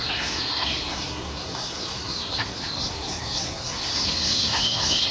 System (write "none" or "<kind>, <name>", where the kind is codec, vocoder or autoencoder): codec, SNAC